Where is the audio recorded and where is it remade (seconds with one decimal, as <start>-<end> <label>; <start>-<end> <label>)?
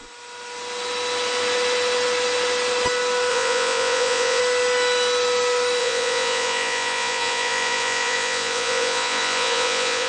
0.0-3.3 recorded; 3.3-4.4 remade; 4.4-5.8 recorded; 5.8-10.1 remade